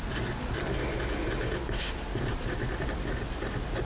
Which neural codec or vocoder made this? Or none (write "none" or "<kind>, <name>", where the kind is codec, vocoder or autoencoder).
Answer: none